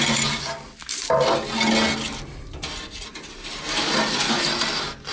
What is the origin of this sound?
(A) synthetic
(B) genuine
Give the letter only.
B